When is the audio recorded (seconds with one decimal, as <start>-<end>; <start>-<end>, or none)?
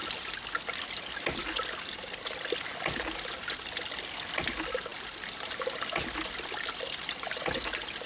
0.0-8.1